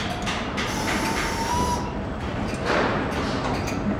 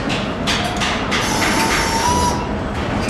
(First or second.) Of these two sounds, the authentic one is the second